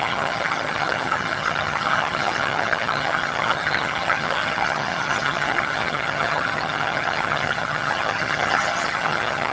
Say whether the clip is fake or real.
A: fake